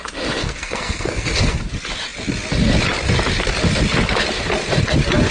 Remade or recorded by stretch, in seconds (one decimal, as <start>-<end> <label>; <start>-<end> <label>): 0.0-0.4 recorded; 0.4-1.7 remade; 1.7-5.3 recorded